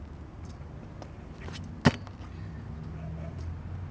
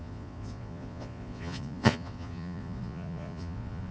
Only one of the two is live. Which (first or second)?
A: first